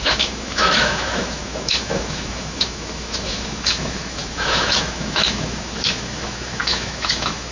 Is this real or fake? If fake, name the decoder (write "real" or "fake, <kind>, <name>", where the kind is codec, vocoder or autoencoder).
fake, autoencoder, DAC-VAE